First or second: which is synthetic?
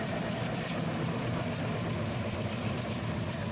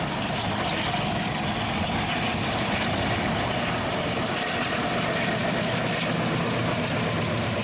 first